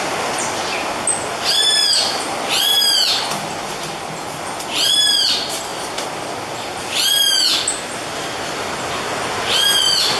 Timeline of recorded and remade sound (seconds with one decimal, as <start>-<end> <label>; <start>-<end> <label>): 0.0-5.7 recorded; 5.7-7.2 remade; 7.2-10.2 recorded